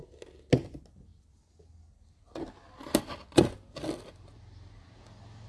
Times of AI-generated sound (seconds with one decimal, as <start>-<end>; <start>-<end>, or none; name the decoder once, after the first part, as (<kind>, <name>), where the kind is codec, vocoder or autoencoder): none